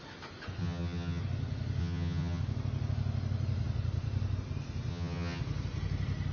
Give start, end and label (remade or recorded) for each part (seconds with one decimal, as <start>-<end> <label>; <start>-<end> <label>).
0.0-0.6 recorded; 0.6-1.2 remade; 1.2-1.8 recorded; 1.8-2.4 remade; 2.4-4.9 recorded; 4.9-5.4 remade; 5.4-6.3 recorded